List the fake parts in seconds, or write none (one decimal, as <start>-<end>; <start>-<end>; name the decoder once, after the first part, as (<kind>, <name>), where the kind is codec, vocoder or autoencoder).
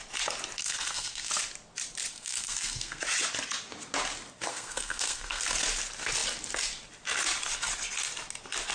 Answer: 0.6-1.3 (codec, SNAC); 2.1-3.0; 4.5-5.4